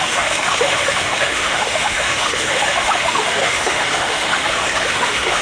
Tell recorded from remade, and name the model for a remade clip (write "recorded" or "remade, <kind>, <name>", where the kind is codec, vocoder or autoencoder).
remade, autoencoder, DAC-VAE